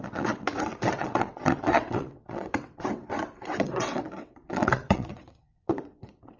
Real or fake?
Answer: fake